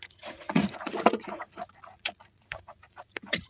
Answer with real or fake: fake